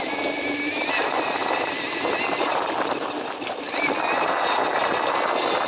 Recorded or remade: recorded